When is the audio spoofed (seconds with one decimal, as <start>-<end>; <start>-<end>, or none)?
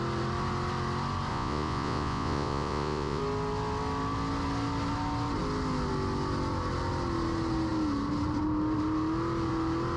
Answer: 1.3-3.2